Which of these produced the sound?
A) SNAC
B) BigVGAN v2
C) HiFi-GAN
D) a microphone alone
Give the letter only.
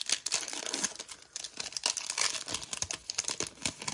D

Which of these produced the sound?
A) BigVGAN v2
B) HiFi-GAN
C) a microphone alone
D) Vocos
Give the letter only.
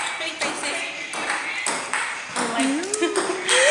C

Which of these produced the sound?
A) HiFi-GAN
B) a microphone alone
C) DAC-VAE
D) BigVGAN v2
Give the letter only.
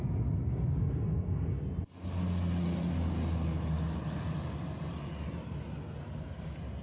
B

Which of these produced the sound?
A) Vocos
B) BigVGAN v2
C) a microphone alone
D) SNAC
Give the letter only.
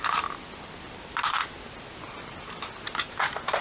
C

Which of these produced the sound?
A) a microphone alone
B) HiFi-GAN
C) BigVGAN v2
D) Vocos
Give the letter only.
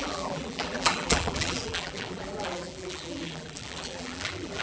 C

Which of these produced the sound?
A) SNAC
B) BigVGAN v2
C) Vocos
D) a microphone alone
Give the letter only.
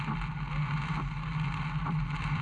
D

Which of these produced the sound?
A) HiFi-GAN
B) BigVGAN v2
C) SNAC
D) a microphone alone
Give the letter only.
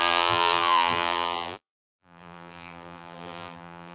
B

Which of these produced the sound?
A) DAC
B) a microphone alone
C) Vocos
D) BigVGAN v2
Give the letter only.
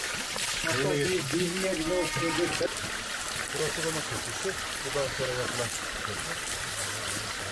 B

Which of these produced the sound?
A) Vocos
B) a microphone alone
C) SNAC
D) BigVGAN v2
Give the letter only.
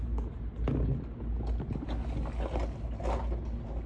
B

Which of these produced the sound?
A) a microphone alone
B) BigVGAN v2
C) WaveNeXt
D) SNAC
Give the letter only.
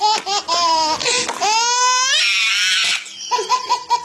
A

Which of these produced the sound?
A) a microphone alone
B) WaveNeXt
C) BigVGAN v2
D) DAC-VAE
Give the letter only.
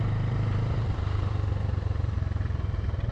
C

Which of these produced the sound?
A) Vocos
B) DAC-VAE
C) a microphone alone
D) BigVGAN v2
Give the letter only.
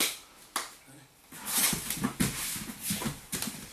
C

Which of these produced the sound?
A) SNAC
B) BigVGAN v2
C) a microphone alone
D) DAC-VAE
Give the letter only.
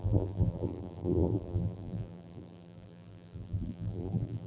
B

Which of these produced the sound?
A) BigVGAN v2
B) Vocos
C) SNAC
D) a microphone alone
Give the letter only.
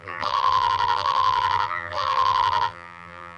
A